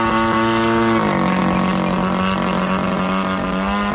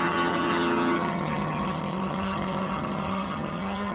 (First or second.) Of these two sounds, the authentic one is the first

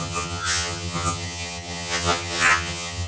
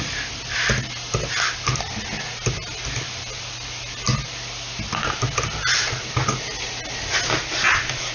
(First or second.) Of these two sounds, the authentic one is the second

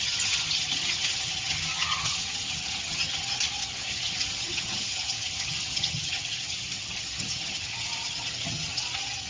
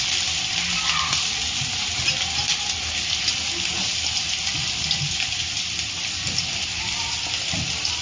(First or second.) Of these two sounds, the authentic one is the second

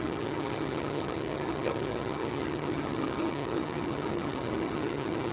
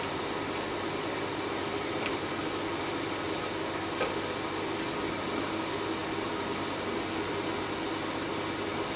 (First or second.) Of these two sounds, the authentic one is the second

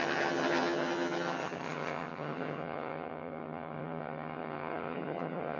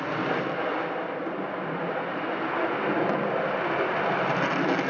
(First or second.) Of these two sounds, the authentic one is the second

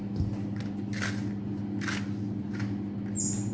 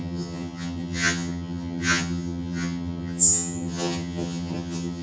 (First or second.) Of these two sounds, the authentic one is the first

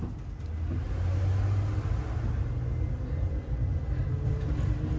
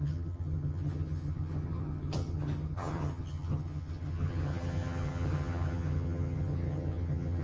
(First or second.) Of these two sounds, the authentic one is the first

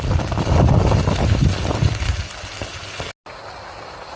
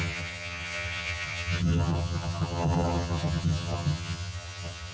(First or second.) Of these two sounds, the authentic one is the first